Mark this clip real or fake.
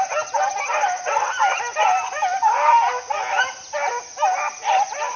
real